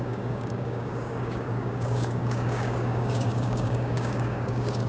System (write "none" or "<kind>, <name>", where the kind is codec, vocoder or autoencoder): codec, DAC